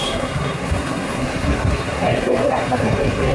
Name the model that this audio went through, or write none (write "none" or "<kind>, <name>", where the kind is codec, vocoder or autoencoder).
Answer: codec, SNAC